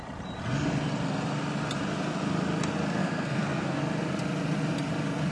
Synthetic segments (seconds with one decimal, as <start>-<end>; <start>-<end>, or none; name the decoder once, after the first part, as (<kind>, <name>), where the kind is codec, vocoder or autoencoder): 3.0-3.8 (codec, SNAC)